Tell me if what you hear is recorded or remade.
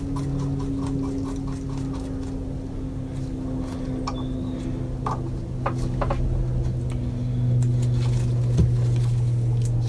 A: recorded